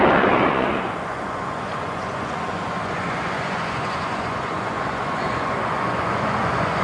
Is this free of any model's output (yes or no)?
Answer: no